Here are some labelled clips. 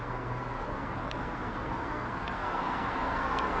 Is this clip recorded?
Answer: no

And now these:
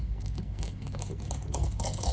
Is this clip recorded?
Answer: no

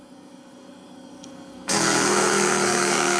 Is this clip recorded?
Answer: no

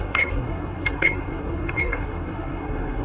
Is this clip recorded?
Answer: no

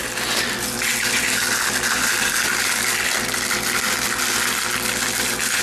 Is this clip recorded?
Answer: yes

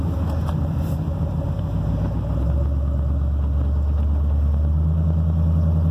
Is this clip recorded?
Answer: yes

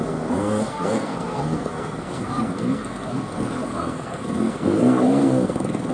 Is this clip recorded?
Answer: no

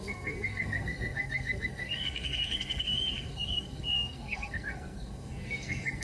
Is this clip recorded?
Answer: no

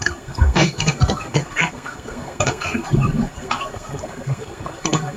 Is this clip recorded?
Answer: no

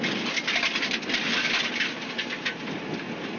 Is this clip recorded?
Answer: yes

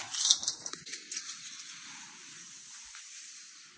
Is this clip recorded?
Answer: yes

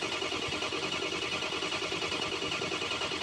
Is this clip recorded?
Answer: yes